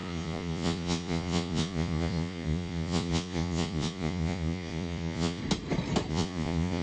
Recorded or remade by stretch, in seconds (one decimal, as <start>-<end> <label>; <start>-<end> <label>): 0.0-5.4 remade; 5.4-6.1 recorded; 6.1-6.8 remade